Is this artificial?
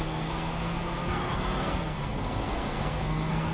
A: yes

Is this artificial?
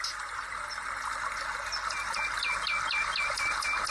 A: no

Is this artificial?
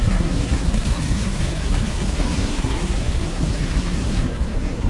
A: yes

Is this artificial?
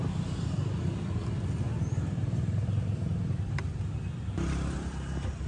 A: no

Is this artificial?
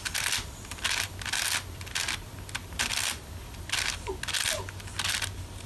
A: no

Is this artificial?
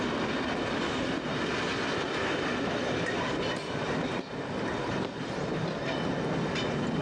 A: no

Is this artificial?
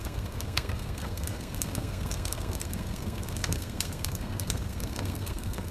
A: yes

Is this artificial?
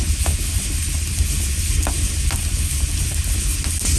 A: no